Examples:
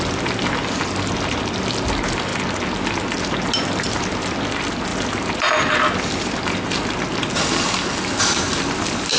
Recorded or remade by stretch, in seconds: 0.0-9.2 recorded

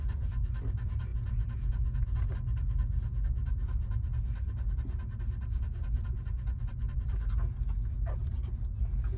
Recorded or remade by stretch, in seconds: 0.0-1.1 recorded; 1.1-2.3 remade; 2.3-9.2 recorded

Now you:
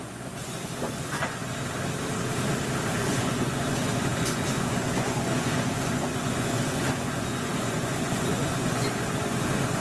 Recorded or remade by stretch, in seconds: 0.0-1.4 remade; 1.4-2.9 recorded; 2.9-9.8 remade